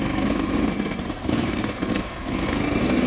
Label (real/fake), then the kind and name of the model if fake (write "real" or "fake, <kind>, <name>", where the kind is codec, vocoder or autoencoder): fake, codec, SNAC